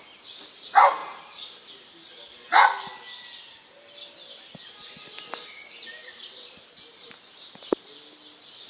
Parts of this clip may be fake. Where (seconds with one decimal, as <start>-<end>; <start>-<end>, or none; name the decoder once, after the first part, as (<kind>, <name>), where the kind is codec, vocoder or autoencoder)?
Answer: 6.0-7.7 (vocoder, BigVGAN v2)